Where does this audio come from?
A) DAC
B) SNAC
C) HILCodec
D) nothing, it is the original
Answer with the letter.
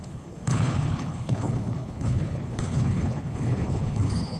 C